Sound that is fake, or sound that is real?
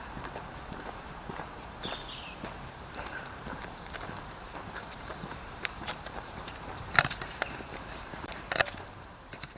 fake